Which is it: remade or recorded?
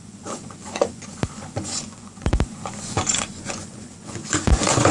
remade